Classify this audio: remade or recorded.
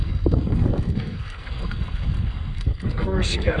remade